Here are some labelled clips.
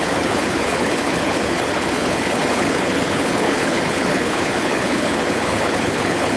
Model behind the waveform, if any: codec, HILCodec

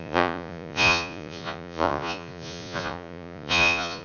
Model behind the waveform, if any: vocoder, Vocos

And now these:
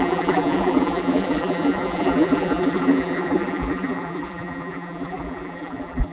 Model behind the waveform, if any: vocoder, BigVGAN v2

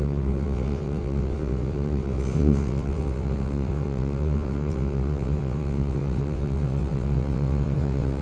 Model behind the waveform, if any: vocoder, WaveNeXt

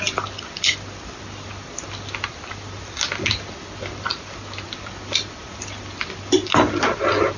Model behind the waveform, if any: none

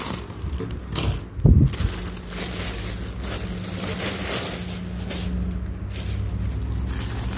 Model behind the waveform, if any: none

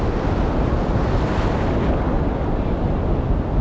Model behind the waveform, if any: none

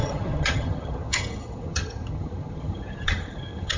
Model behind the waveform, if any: vocoder, HiFi-GAN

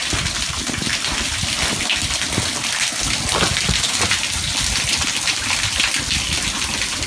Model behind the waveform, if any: none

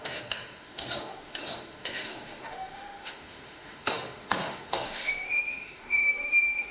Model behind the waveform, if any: autoencoder, DAC-VAE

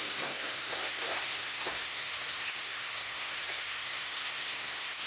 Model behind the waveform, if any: codec, SNAC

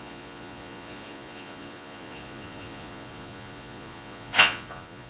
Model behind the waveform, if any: vocoder, Vocos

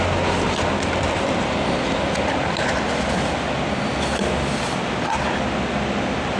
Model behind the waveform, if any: none